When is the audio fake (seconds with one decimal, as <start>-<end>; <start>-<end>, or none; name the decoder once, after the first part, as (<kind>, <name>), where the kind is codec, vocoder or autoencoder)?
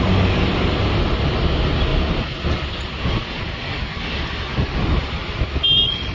none